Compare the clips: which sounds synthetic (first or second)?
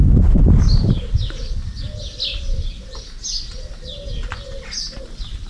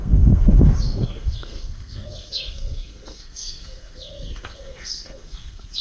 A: second